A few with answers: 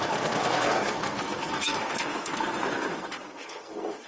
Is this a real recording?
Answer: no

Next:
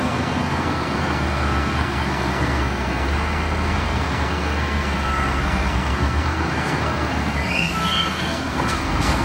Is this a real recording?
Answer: no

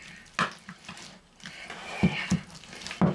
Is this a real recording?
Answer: yes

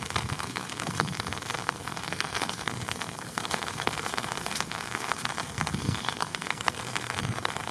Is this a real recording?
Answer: no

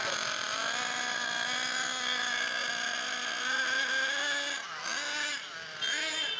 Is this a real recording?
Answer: yes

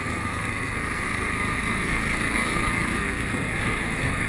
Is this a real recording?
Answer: no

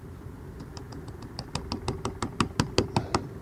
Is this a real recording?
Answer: yes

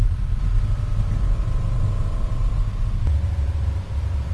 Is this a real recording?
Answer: yes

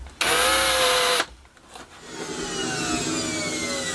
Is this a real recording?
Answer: yes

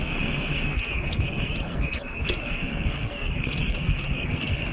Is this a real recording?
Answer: no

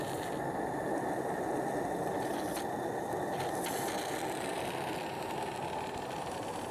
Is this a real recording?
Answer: yes